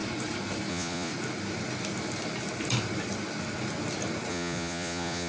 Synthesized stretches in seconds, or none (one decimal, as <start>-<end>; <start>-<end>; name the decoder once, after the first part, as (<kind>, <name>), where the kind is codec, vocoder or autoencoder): 0.7-1.1 (vocoder, Vocos); 4.3-5.3